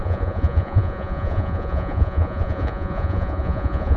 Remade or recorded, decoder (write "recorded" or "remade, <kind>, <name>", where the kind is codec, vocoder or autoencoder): remade, vocoder, Vocos